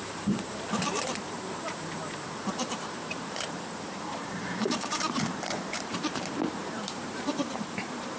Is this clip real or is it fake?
fake